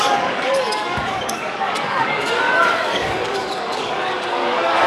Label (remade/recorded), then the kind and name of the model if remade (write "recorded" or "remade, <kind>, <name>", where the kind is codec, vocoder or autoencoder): remade, codec, DAC